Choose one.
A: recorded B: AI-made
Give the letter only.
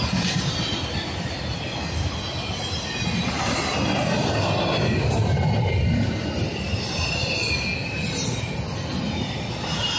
A